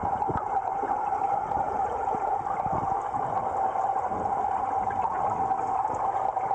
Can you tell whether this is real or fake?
real